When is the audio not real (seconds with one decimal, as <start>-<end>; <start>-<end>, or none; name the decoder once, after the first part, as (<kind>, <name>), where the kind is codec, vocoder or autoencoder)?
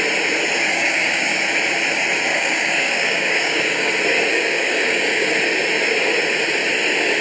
0.7-1.4 (codec, DAC); 2.3-3.9; 4.3-5.3